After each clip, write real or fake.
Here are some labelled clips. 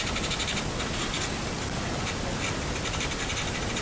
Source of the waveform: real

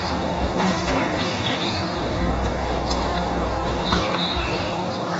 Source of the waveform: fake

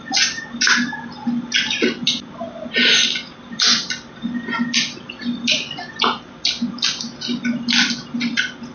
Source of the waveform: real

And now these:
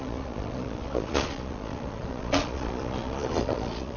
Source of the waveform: fake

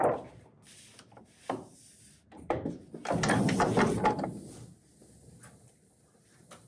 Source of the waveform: real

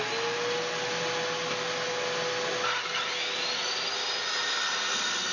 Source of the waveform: real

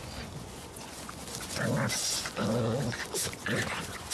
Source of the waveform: fake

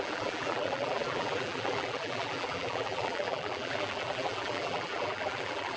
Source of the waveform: fake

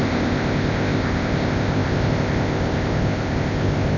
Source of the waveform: fake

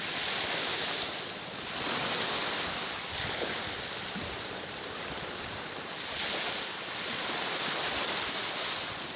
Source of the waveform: real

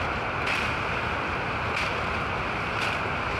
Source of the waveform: real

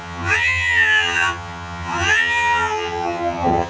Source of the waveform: fake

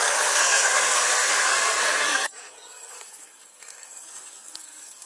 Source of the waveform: fake